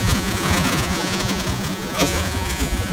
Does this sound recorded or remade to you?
remade